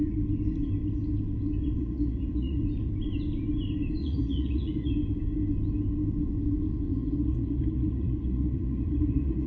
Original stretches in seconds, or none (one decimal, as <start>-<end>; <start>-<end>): 0.0-1.8; 2.6-4.0; 4.9-6.9